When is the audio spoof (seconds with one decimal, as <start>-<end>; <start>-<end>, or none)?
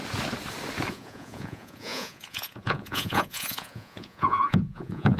0.9-5.2